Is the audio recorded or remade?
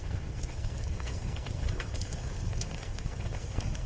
remade